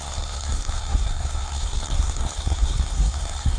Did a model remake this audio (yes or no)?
yes